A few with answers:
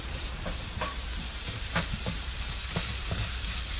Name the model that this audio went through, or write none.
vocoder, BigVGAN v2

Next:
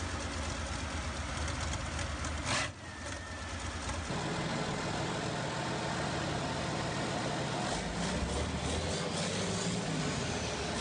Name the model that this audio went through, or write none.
none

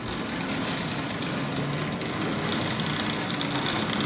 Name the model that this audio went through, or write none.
none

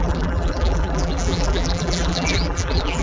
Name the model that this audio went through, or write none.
vocoder, BigVGAN v2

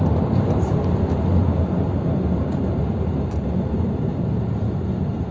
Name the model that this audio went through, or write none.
vocoder, BigVGAN v2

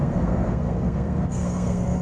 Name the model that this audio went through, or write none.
codec, SNAC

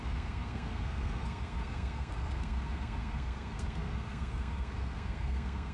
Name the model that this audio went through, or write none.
codec, SNAC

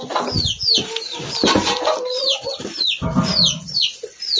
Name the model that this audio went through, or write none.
none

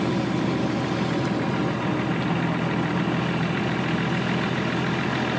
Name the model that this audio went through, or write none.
none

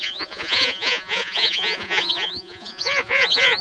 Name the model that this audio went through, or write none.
vocoder, Vocos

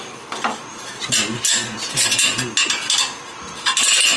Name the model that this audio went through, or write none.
none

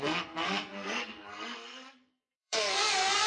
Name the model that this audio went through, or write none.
codec, SNAC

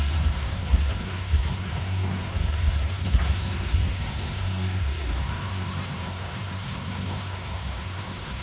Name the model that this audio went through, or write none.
codec, SNAC